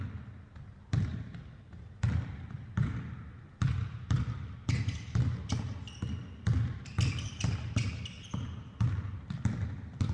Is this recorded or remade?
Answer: recorded